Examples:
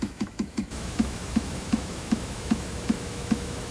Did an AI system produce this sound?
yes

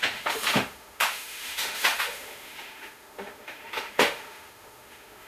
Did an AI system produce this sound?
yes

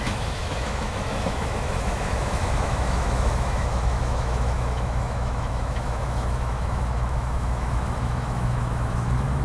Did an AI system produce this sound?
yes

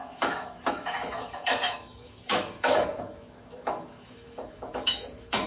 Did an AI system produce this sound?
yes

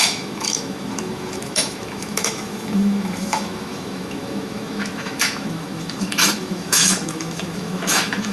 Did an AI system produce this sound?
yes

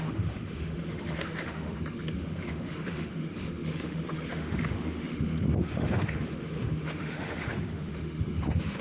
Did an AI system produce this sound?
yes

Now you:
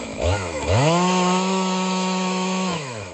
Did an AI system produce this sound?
yes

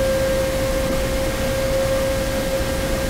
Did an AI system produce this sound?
no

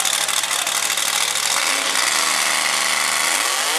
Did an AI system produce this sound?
no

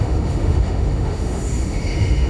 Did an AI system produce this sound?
yes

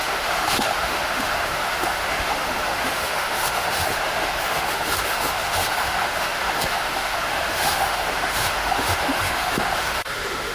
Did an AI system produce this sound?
yes